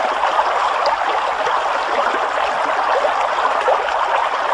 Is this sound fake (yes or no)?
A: no